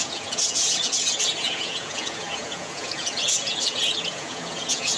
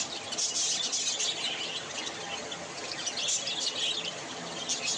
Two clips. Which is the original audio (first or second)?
second